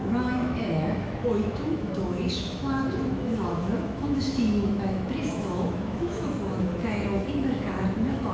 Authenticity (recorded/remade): remade